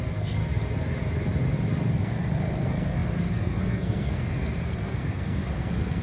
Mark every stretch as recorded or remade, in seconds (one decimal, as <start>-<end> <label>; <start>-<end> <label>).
0.0-0.4 remade; 0.4-1.9 recorded; 1.9-6.0 remade